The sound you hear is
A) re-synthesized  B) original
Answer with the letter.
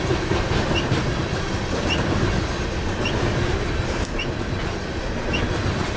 B